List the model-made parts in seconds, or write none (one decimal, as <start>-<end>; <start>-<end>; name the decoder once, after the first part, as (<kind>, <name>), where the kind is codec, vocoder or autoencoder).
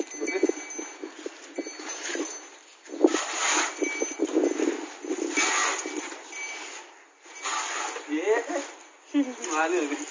none